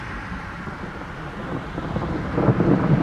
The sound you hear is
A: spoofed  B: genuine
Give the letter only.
B